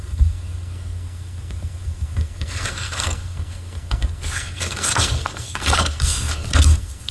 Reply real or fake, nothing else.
fake